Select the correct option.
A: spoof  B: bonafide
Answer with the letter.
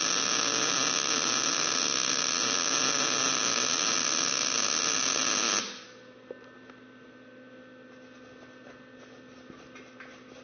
B